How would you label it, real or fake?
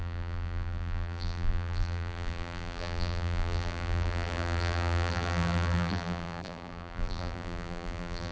fake